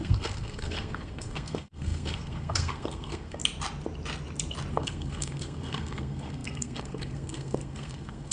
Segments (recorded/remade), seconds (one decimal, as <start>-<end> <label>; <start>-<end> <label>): 0.0-3.4 remade; 3.4-4.7 recorded; 4.7-8.3 remade